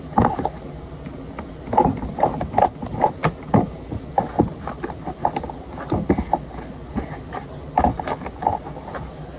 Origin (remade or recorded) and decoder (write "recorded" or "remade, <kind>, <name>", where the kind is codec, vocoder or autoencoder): recorded